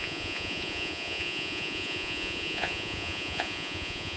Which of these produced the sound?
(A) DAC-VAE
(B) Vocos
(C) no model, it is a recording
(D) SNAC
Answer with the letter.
B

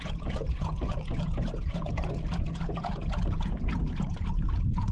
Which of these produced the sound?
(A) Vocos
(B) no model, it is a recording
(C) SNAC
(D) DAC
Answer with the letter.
A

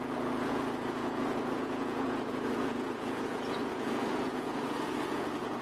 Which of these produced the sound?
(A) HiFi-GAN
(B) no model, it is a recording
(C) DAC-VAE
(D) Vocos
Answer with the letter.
D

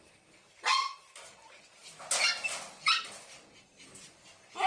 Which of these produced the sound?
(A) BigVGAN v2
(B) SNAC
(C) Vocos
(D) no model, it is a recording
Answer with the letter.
D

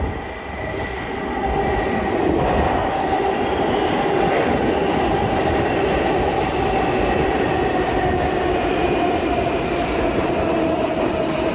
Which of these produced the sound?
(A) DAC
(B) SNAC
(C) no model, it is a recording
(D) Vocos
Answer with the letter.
C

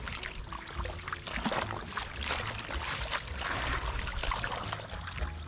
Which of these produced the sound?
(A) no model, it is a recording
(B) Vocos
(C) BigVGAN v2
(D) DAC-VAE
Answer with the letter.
A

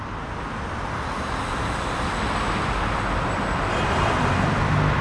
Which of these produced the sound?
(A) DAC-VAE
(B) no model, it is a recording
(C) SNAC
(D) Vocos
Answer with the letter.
B